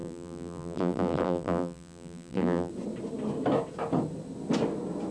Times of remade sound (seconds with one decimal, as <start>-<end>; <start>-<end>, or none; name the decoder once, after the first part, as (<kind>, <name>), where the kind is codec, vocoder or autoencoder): 0.0-2.7 (vocoder, BigVGAN v2)